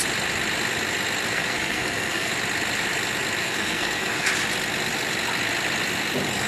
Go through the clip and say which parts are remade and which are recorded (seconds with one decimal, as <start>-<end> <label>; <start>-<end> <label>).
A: 0.0-1.3 recorded; 1.3-2.3 remade; 2.3-3.4 recorded; 3.4-4.3 remade; 4.3-6.5 recorded